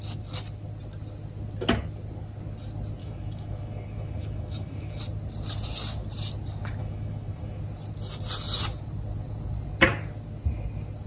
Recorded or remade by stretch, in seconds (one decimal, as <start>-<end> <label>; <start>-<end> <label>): 0.0-3.0 recorded; 3.0-5.0 remade; 5.0-6.8 recorded; 6.8-7.6 remade; 7.6-11.1 recorded